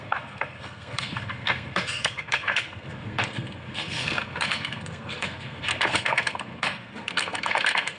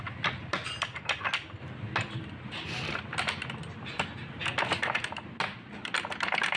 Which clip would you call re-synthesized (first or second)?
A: first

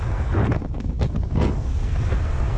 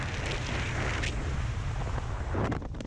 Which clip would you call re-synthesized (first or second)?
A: first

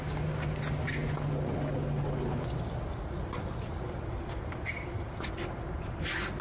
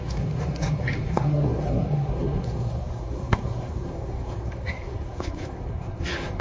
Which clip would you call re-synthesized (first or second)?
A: second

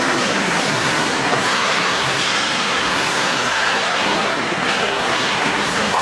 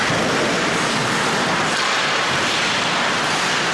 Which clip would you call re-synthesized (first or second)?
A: first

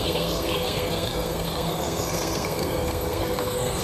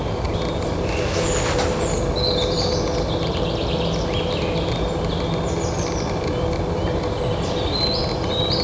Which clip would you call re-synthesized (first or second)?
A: first